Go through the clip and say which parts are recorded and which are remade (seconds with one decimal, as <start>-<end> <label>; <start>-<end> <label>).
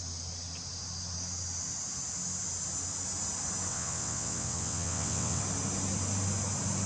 0.0-3.7 recorded; 3.7-5.4 remade; 5.4-6.9 recorded